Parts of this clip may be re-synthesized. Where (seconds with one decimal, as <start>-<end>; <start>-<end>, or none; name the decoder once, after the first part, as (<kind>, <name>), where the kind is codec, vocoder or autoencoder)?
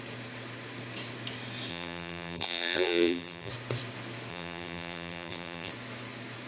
1.7-3.5 (vocoder, BigVGAN v2); 4.3-5.7